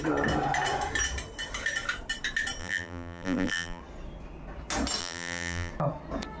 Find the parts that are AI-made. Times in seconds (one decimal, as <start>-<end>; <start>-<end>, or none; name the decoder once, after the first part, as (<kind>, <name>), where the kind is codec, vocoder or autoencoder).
2.6-3.8 (vocoder, BigVGAN v2); 5.0-5.7